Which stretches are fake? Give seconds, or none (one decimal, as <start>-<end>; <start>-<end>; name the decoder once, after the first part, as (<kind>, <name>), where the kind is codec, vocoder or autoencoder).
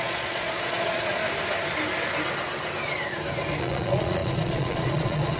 0.0-1.2 (vocoder, Vocos); 3.6-5.4